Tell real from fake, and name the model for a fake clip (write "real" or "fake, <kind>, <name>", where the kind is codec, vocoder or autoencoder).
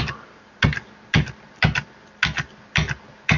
real